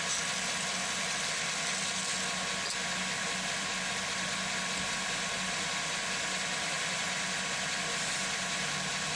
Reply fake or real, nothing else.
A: real